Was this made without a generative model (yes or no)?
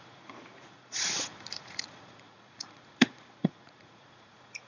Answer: no